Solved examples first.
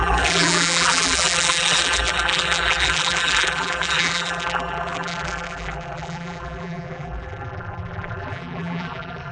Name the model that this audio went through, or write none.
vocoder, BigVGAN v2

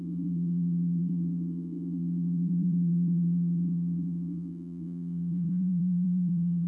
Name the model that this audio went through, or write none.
vocoder, BigVGAN v2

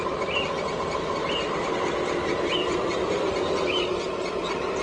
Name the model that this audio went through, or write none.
vocoder, BigVGAN v2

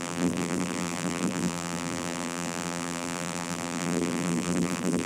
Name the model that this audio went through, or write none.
vocoder, BigVGAN v2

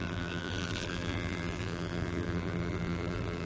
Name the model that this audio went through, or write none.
vocoder, BigVGAN v2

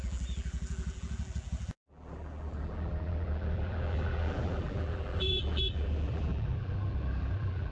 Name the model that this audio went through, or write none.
vocoder, BigVGAN v2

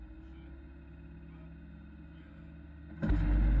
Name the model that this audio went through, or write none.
none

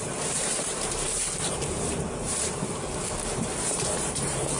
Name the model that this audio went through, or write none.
vocoder, BigVGAN v2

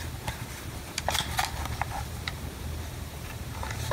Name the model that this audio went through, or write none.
vocoder, BigVGAN v2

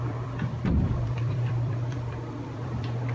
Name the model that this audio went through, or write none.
vocoder, BigVGAN v2